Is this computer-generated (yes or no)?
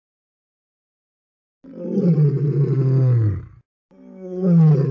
no